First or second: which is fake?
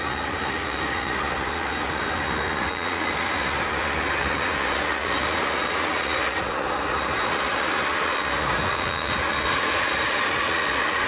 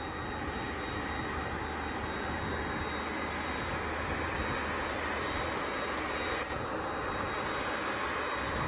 first